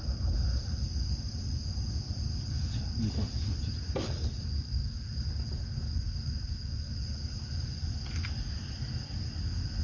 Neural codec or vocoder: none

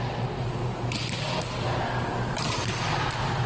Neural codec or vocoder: none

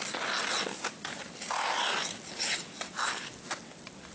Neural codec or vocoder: none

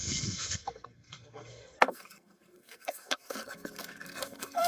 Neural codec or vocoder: codec, SNAC